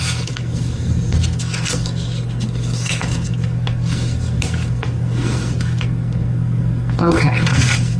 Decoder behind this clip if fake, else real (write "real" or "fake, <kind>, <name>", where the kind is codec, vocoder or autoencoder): fake, codec, SNAC